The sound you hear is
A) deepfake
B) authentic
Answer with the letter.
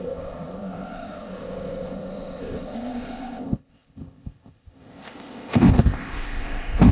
A